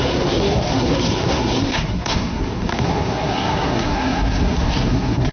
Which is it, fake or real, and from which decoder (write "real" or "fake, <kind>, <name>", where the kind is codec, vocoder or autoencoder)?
fake, codec, SNAC